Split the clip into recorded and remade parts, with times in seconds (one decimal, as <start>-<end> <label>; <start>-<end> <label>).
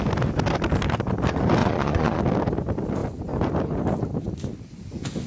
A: 0.0-1.6 recorded; 1.6-2.2 remade; 2.2-5.3 recorded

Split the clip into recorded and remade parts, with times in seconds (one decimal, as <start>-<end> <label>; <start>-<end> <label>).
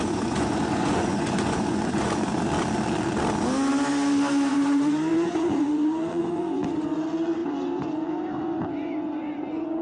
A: 0.0-2.3 remade; 2.3-4.5 recorded; 4.5-9.8 remade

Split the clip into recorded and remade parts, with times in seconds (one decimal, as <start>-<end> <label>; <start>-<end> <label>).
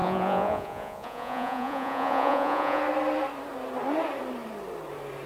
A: 0.0-2.8 remade; 2.8-5.3 recorded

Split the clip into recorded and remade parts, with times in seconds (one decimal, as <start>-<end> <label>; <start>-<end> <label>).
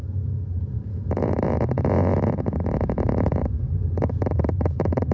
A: 0.0-5.1 remade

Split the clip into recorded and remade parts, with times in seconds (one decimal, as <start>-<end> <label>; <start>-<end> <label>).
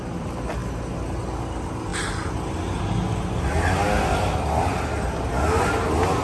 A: 0.0-6.2 recorded